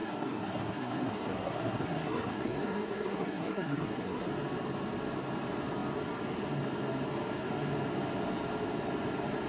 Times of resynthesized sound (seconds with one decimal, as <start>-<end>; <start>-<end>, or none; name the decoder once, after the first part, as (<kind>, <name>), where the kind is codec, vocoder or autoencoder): 0.0-4.3 (codec, SNAC)